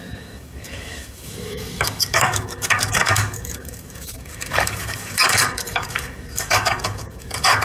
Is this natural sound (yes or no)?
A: no